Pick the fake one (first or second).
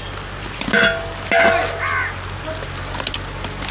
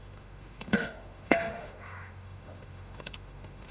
second